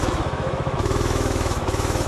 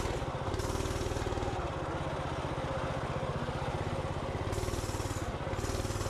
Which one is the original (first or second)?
second